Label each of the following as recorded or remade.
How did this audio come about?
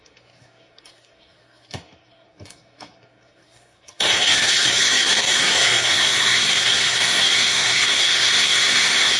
remade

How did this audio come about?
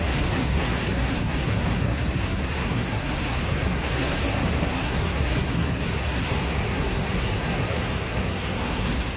remade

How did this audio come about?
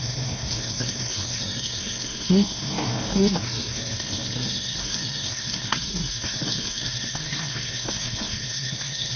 remade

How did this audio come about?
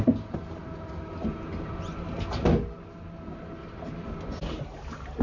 recorded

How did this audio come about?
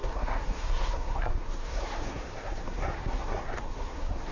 remade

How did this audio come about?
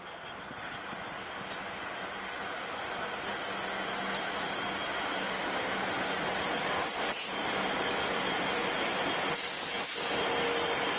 recorded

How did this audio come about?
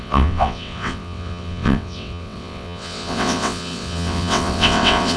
remade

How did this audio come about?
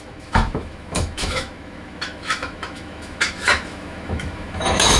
remade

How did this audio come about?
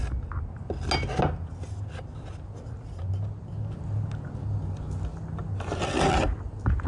recorded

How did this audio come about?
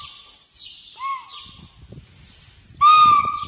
recorded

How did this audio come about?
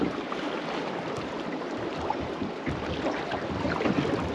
recorded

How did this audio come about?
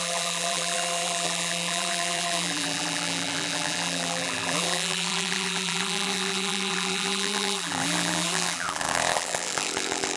remade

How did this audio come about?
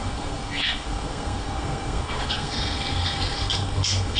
remade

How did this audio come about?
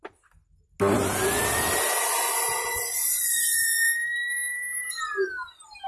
recorded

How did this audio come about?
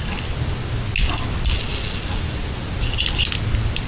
recorded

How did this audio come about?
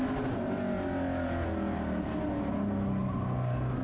recorded